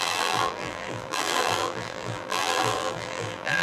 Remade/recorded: remade